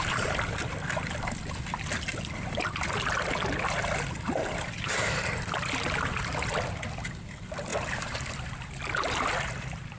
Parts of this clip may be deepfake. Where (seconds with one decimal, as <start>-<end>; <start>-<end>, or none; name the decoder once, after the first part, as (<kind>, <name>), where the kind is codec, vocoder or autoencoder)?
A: none